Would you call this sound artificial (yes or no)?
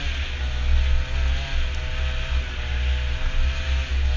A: no